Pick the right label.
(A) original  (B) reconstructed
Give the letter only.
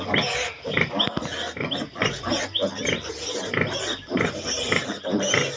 A